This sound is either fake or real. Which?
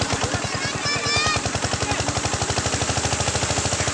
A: real